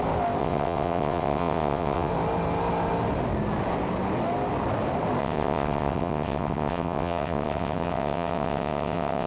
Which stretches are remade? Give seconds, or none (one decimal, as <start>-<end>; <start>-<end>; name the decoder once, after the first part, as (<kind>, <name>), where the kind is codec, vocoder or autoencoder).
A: 0.4-2.1 (vocoder, WaveNeXt); 5.2-9.3